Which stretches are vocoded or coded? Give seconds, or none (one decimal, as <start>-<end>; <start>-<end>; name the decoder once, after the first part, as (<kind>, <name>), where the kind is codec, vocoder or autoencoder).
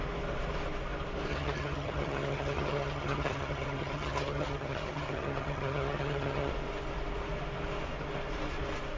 1.3-6.5 (vocoder, HiFi-GAN)